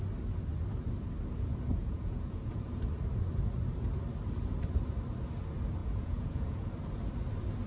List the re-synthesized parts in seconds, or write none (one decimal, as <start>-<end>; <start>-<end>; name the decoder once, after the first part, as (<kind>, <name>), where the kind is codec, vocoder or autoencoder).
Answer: 1.8-2.5 (vocoder, Vocos); 5.8-6.7